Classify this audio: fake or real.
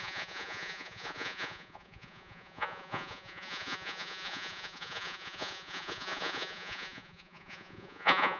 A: fake